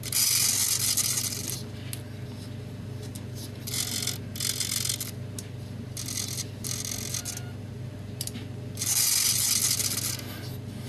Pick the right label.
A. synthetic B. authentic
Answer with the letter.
B